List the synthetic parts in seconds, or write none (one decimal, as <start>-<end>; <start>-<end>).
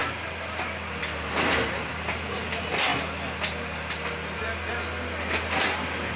none